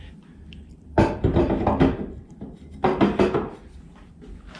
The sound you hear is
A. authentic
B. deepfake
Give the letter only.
B